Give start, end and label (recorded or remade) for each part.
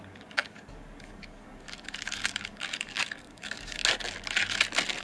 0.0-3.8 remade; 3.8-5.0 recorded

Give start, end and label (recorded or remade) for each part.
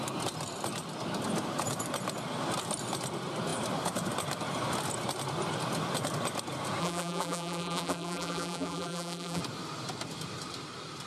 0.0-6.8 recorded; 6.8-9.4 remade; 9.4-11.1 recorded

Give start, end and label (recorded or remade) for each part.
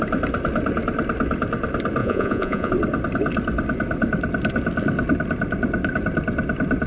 0.0-2.0 recorded; 2.0-2.7 remade; 2.7-6.9 recorded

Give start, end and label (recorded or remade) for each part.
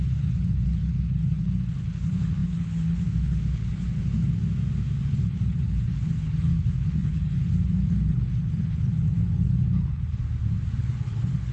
0.0-4.4 remade; 4.4-5.0 recorded; 5.0-10.2 remade; 10.2-10.8 recorded; 10.8-11.5 remade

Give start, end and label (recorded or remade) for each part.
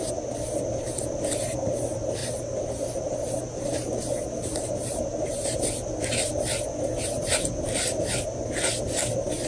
0.0-2.2 recorded; 2.2-5.6 remade; 5.6-9.5 recorded